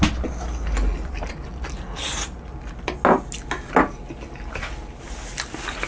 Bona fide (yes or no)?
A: yes